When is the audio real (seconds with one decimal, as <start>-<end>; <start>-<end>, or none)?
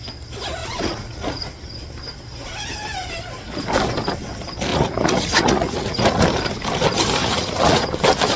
0.0-0.6; 1.5-4.7; 6.2-7.2; 7.9-8.4